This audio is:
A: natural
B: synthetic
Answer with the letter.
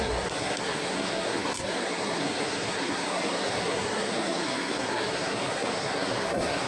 B